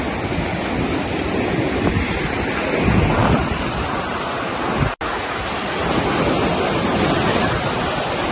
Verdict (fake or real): real